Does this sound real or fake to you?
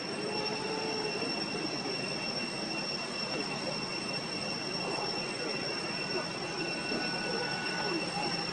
real